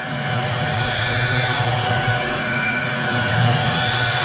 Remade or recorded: remade